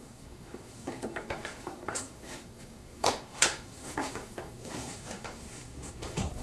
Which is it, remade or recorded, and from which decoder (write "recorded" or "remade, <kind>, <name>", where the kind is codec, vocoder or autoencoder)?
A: remade, codec, SNAC